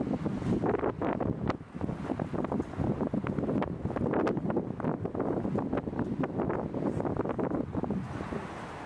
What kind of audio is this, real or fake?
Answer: real